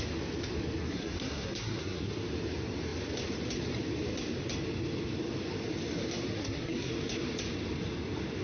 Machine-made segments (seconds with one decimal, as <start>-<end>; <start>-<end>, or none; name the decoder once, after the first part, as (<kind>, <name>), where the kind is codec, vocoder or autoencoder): 0.8-2.1 (codec, SNAC); 6.4-6.9

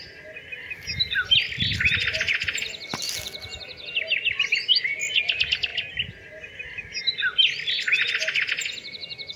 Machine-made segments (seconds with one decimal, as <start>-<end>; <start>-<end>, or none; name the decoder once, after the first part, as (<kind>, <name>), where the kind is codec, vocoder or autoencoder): none

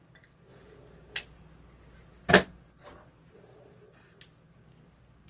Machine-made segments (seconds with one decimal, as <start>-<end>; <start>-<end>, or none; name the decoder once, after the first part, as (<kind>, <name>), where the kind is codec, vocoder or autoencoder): none

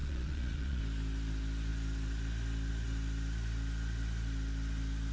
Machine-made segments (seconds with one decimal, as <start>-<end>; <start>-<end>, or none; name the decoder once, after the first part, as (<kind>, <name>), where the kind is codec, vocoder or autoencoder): 0.0-0.8 (vocoder, Vocos)

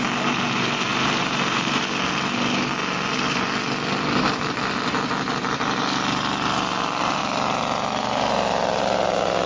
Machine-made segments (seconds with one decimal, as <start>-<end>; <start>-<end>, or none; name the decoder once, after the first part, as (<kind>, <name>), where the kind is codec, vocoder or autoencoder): 0.9-1.8 (vocoder, BigVGAN v2)

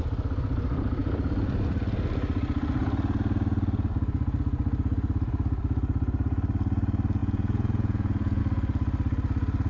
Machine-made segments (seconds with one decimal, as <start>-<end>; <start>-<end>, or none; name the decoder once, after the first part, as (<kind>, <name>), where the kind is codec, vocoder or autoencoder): 7.2-8.4 (vocoder, Vocos)